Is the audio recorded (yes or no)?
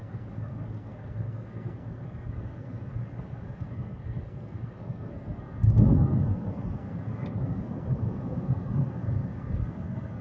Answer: no